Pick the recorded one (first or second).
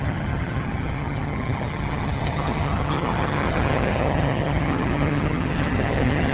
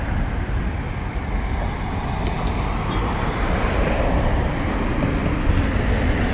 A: second